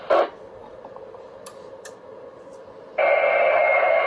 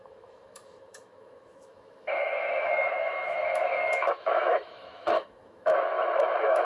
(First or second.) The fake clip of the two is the second